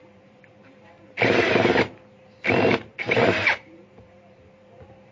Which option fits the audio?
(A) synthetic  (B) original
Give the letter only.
A